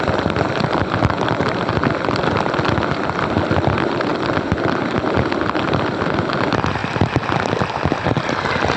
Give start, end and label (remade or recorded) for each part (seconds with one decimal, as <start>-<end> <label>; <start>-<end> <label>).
0.0-8.8 recorded